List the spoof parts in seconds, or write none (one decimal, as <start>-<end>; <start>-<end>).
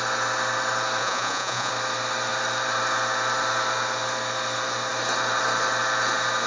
1.0-1.7